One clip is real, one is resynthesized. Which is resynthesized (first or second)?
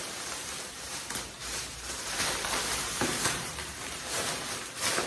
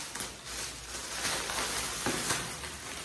first